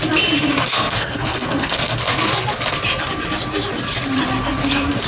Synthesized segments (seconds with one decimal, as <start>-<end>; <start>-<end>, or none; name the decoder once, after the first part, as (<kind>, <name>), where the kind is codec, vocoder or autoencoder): 0.7-2.0 (codec, SNAC)